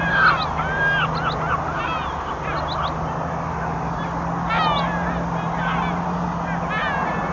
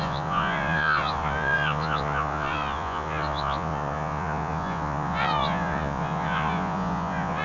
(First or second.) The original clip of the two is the first